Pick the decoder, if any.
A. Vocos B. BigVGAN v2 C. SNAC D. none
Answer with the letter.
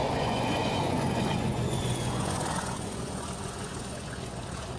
A